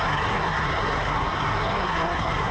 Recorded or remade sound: remade